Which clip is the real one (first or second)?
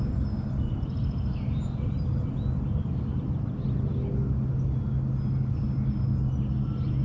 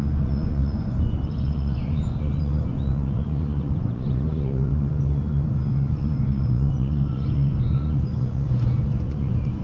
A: first